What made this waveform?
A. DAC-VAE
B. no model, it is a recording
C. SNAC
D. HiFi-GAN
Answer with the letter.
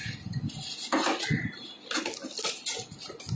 B